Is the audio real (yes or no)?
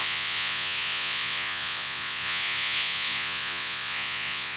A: no